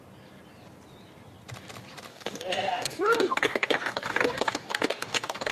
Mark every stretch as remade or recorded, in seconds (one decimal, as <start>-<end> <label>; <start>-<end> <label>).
0.0-2.1 recorded; 2.1-5.5 remade